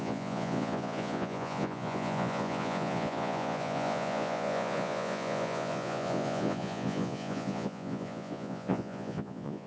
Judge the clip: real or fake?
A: fake